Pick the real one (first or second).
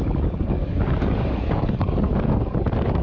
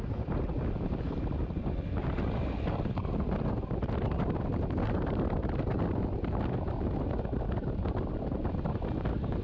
second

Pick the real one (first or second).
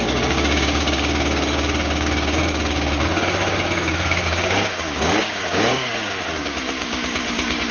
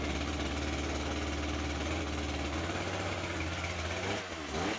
second